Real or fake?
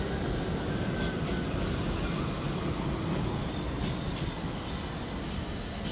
real